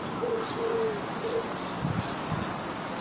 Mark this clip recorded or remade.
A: recorded